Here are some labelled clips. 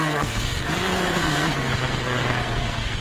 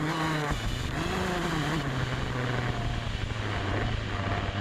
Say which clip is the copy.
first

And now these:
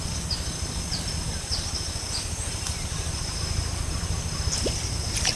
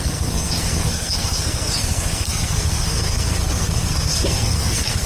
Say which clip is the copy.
second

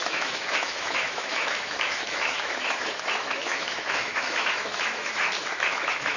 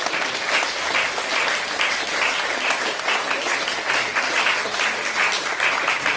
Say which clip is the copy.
first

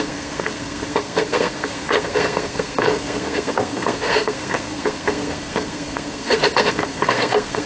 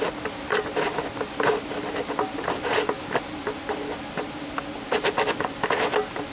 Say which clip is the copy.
first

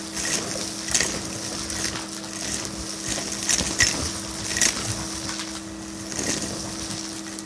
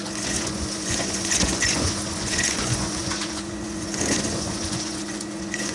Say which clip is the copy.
second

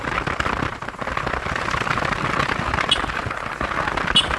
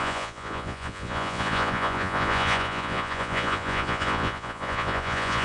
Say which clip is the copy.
second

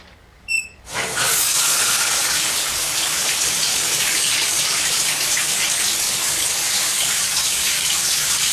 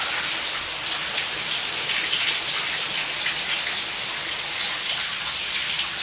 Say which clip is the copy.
first